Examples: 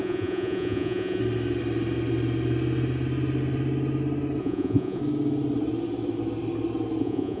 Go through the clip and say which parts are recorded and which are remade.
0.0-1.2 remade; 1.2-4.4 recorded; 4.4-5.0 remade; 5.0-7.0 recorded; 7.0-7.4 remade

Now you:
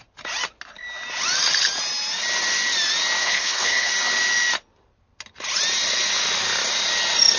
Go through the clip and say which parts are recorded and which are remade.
0.0-3.2 recorded; 3.2-3.9 remade; 3.9-7.4 recorded

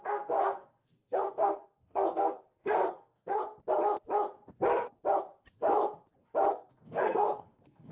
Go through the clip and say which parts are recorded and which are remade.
0.0-3.4 remade; 3.4-6.5 recorded; 6.5-7.9 remade